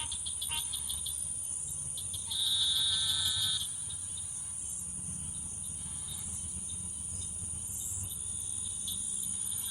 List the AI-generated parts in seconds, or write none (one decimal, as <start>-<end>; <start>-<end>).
2.2-4.3; 6.1-7.6